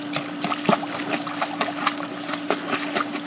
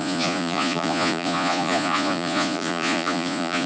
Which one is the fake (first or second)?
second